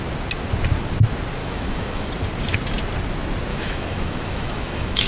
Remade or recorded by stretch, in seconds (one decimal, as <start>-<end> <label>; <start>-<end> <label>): 0.0-1.4 recorded; 1.4-2.1 remade; 2.1-3.5 recorded; 3.5-5.1 remade